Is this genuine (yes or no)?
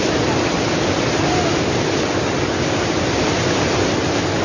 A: yes